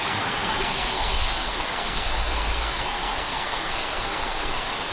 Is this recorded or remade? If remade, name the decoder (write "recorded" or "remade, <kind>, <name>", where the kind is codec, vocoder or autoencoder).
remade, codec, SNAC